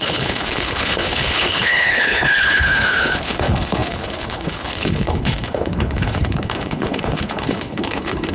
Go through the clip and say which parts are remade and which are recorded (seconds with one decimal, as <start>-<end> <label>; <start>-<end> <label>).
0.0-8.3 remade